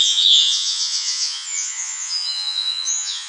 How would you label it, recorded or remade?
remade